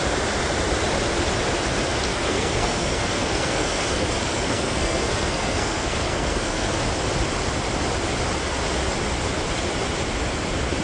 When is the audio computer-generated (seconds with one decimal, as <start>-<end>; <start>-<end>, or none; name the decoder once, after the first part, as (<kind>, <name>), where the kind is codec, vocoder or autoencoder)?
2.1-6.8 (codec, SNAC)